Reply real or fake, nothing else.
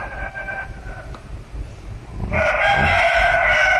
fake